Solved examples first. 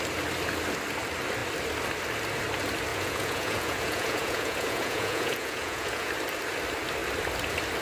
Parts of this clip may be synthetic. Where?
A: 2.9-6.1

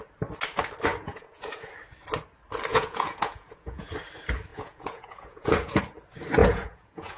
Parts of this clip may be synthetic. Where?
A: 0.9-1.7; 2.7-3.9; 4.5-5.8; 6.4-7.2

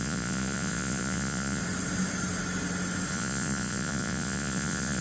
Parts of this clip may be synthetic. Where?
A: 0.0-1.6; 3.1-5.0